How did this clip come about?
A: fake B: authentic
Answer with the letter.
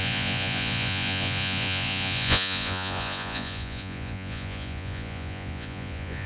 A